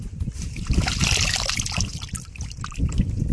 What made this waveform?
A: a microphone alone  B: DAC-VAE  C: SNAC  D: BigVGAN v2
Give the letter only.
A